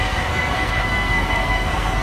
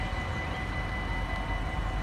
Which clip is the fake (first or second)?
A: first